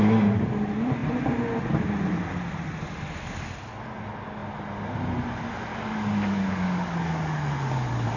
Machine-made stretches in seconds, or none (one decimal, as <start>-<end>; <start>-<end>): 5.7-8.2